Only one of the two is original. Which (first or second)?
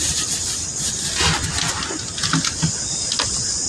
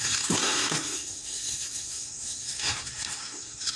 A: first